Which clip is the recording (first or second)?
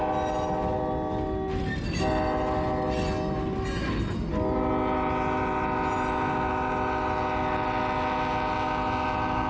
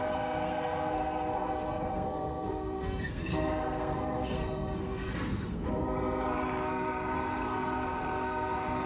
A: first